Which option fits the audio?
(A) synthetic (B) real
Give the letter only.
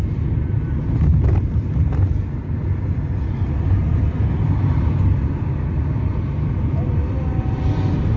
B